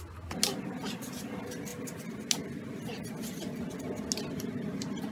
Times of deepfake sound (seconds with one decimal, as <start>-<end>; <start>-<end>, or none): none